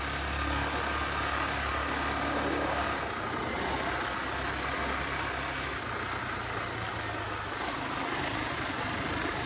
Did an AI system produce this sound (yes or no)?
no